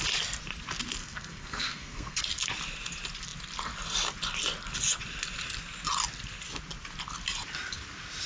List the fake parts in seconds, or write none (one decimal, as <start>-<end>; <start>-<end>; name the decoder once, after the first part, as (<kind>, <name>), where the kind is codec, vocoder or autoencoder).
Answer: 1.0-2.2 (codec, SNAC)

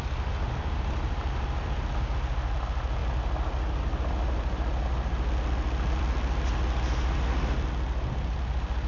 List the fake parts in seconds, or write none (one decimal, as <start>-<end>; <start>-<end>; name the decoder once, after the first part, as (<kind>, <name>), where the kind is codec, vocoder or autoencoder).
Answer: none

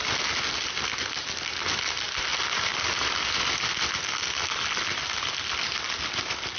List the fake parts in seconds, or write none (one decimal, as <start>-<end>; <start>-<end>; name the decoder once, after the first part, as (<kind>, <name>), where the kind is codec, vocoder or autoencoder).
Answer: none

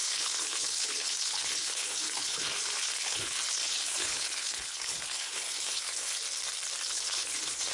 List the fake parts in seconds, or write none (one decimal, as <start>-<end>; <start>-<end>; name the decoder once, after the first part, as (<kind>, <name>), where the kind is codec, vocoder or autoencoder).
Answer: 0.0-6.2 (codec, HILCodec); 6.9-7.7

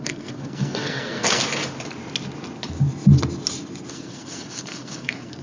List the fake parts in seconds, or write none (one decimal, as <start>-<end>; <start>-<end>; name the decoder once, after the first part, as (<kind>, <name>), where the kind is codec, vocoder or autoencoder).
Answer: 0.0-1.4 (codec, SNAC); 3.9-5.4

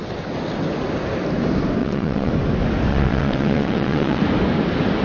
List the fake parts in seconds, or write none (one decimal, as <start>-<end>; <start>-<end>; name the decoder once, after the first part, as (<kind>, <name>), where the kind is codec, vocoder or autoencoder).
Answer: 1.8-2.3 (vocoder, WaveNeXt); 2.9-4.2